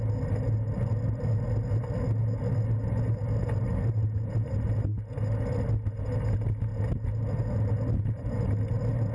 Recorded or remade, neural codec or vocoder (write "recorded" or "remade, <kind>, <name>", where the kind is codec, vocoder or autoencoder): recorded